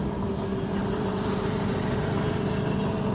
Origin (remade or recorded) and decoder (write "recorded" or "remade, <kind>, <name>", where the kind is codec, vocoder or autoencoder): recorded